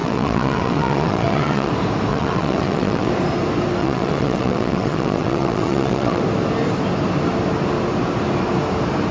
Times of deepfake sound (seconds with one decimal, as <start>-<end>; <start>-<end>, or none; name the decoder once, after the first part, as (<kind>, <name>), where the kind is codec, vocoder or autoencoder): 0.0-1.7 (vocoder, WaveNeXt); 2.1-3.1; 3.8-6.2